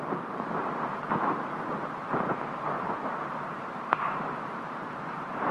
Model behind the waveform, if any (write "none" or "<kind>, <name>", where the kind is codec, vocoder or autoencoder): vocoder, BigVGAN v2